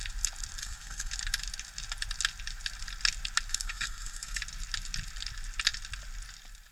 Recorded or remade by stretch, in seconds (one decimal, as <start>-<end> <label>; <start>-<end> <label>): 0.0-0.6 recorded; 0.6-1.1 remade; 1.1-3.5 recorded; 3.5-4.4 remade; 4.4-6.7 recorded